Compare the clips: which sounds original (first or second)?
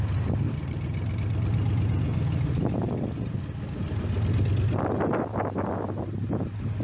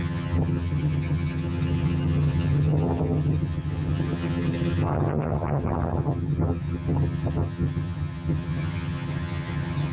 first